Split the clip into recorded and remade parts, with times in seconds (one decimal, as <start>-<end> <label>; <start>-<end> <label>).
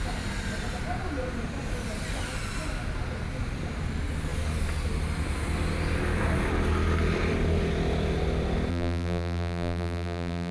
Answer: 0.0-8.7 recorded; 8.7-10.5 remade